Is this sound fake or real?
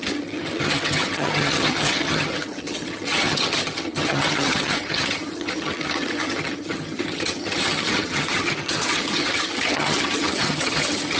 fake